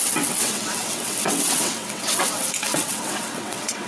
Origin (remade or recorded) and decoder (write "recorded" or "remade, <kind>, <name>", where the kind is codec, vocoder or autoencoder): remade, vocoder, WaveNeXt